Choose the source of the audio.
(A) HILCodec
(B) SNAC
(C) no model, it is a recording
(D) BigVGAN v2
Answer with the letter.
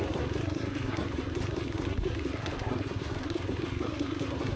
B